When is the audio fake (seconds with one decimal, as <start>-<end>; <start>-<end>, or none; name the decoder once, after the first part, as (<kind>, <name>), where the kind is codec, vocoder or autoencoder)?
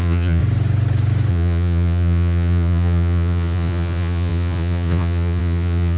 0.0-0.4 (vocoder, Vocos); 1.3-6.0